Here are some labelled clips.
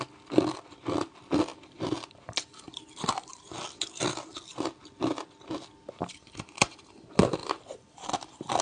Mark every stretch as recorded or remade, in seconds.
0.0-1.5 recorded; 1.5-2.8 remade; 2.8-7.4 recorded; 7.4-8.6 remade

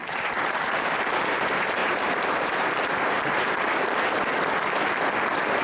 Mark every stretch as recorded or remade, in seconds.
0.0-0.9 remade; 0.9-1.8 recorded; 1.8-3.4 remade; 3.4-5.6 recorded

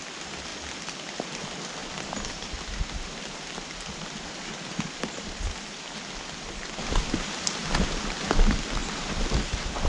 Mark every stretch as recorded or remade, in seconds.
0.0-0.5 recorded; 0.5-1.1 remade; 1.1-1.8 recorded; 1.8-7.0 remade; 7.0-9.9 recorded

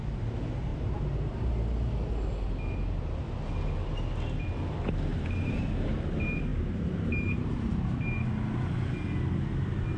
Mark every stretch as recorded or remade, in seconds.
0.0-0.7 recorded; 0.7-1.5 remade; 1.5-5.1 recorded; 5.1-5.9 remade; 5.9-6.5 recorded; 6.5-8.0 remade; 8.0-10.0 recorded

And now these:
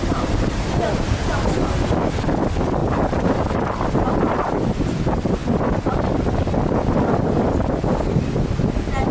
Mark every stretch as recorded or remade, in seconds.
0.0-2.8 recorded; 2.8-4.3 remade; 4.3-9.1 recorded

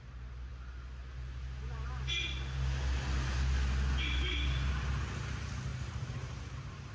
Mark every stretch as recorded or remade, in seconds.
0.0-5.7 recorded; 5.7-6.9 remade